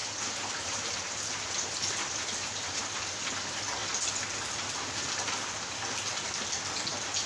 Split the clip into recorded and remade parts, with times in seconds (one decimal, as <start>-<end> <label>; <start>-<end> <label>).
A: 0.0-2.8 remade; 2.8-7.3 recorded